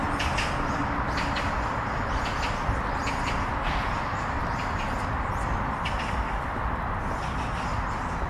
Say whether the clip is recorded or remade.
recorded